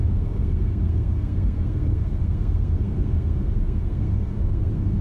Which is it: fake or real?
fake